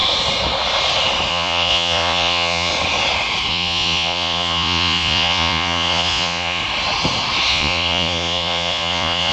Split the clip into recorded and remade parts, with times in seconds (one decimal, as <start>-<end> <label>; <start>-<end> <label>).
0.0-1.3 recorded; 1.3-2.7 remade; 2.7-3.5 recorded; 3.5-6.6 remade; 6.6-7.5 recorded; 7.5-9.3 remade